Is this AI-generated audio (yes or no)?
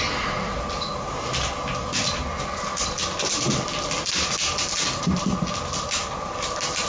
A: no